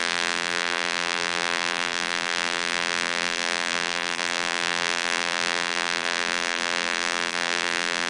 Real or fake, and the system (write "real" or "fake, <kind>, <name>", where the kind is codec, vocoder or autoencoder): fake, vocoder, BigVGAN v2